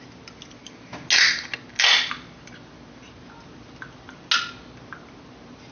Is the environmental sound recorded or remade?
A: recorded